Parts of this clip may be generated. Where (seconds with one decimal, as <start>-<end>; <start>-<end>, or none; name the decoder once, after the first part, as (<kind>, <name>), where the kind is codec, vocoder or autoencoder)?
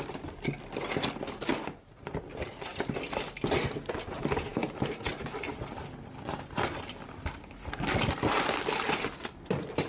none